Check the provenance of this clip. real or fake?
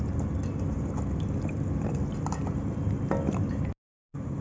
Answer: real